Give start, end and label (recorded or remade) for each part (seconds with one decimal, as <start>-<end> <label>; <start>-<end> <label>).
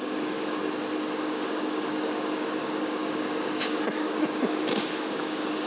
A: 0.0-0.6 remade; 0.6-1.2 recorded; 1.2-5.7 remade